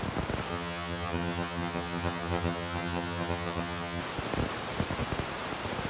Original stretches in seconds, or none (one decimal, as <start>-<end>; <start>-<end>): 0.0-0.5; 4.0-5.9